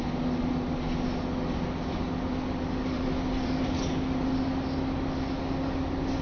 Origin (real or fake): real